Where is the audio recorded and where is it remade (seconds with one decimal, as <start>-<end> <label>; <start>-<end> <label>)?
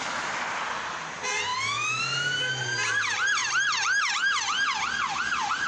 0.0-5.7 recorded